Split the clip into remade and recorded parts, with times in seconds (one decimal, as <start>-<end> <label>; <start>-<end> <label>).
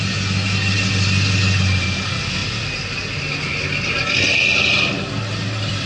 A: 0.0-5.9 recorded